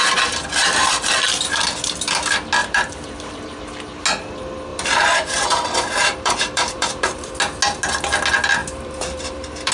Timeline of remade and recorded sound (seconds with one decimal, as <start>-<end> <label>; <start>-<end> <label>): 0.0-2.6 recorded; 2.6-3.6 remade; 3.6-4.7 recorded; 4.7-7.3 remade; 7.3-8.6 recorded; 8.6-9.7 remade